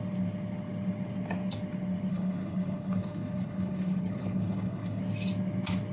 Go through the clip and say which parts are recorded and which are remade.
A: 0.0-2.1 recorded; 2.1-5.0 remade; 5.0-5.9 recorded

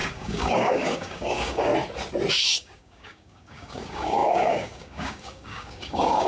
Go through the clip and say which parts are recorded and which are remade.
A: 0.0-1.7 remade; 1.7-2.3 recorded; 2.3-6.3 remade

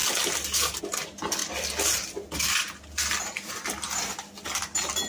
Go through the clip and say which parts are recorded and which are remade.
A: 0.0-5.1 recorded